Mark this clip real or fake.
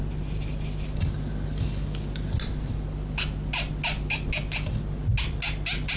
real